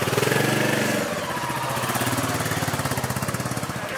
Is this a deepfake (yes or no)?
no